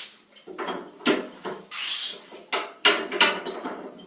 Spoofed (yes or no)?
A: yes